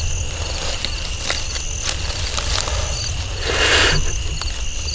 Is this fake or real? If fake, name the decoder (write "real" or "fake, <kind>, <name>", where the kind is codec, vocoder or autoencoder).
real